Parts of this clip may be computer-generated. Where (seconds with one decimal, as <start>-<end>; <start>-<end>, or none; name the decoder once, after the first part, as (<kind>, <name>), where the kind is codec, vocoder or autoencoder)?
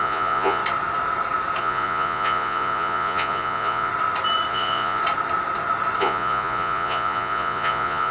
0.0-0.6 (vocoder, Vocos); 1.6-3.9; 4.5-5.0; 6.0-8.1